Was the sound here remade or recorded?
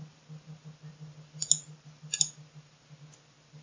recorded